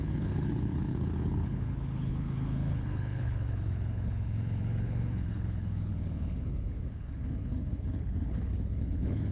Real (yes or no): no